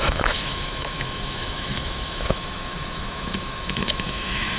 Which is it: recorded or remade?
remade